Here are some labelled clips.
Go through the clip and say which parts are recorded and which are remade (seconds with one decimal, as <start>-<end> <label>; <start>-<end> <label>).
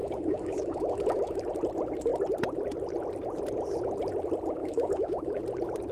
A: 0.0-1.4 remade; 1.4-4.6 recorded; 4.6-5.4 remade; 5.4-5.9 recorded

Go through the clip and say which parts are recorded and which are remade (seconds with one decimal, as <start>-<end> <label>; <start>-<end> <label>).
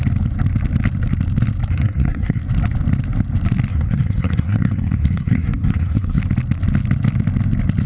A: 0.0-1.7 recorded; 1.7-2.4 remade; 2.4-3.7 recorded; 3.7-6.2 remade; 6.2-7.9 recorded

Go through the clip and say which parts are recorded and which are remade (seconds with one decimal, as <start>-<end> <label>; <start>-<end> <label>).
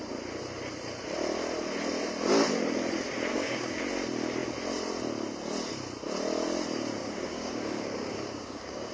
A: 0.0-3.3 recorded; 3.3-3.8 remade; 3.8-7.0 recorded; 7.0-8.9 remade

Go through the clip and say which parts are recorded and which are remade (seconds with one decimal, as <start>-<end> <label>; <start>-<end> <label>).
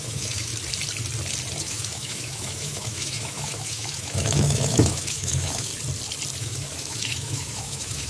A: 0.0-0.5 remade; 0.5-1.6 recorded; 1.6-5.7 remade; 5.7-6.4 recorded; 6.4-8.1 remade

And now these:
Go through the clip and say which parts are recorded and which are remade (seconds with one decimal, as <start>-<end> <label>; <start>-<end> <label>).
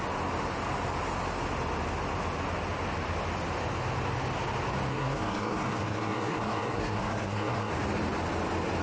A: 0.0-4.9 recorded; 4.9-7.7 remade; 7.7-8.8 recorded